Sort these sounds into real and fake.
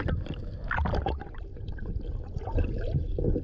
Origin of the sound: real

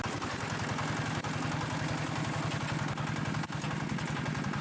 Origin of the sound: real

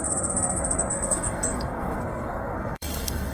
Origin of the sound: fake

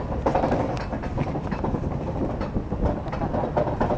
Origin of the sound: real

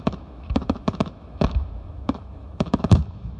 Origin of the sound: fake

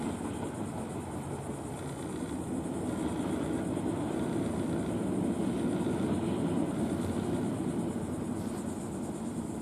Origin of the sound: real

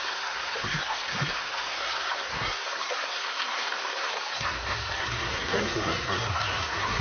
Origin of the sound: fake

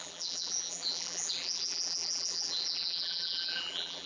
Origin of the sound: fake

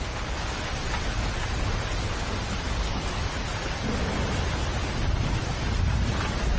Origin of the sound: real